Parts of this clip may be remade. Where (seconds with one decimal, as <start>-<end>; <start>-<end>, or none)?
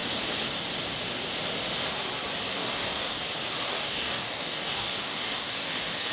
2.5-3.2; 3.7-6.1